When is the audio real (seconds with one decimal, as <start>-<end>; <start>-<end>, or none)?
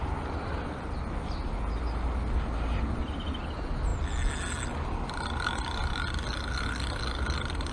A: 0.0-7.7